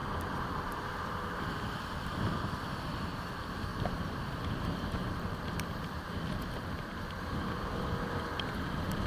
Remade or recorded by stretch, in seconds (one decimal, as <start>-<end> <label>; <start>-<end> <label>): 0.0-3.7 recorded; 3.7-7.9 remade; 7.9-9.1 recorded